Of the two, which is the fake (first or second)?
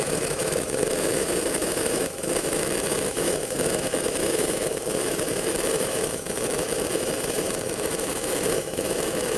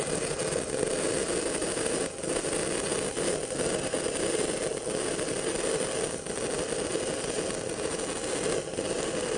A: first